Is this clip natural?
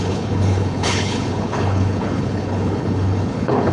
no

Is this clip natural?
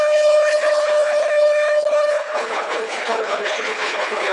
no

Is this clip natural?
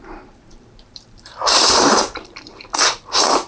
no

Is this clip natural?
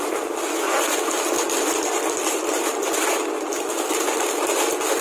yes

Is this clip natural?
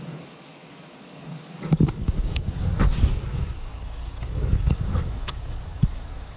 no